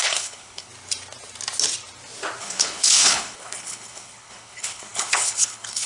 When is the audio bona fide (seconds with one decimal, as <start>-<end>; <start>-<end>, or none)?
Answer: 0.7-2.4